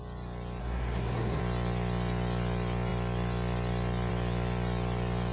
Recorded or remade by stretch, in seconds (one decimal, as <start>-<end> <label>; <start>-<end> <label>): 0.0-0.6 recorded; 0.6-1.4 remade; 1.4-5.3 recorded

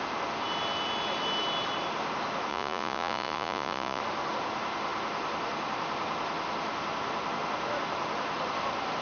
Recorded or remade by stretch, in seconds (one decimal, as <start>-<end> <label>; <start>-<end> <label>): 0.0-2.5 recorded; 2.5-4.0 remade; 4.0-9.0 recorded

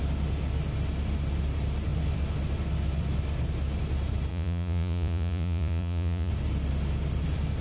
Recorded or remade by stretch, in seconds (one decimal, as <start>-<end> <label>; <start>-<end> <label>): 0.0-4.3 recorded; 4.3-6.3 remade; 6.3-7.6 recorded

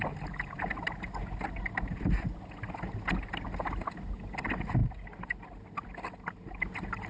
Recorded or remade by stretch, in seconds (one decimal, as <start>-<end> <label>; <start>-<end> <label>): 0.0-7.1 recorded

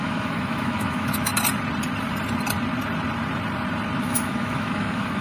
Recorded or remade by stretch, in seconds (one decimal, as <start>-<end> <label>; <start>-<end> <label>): 0.0-1.3 remade; 1.3-4.0 recorded; 4.0-5.2 remade

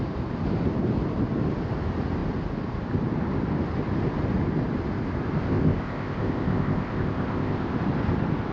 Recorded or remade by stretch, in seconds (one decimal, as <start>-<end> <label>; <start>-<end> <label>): 0.0-5.4 recorded; 5.4-7.7 remade; 7.7-8.5 recorded

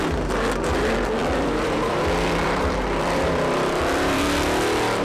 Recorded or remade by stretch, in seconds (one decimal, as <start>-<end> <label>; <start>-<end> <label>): 0.0-1.2 recorded; 1.2-4.2 remade; 4.2-5.0 recorded

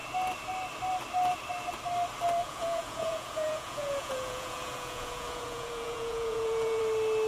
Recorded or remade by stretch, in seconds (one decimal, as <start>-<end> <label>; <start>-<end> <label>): 0.0-2.4 recorded; 2.4-6.8 remade; 6.8-7.3 recorded